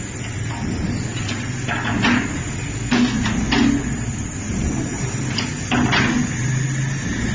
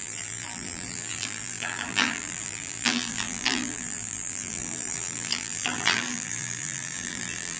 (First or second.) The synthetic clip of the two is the second